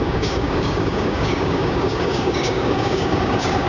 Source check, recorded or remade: remade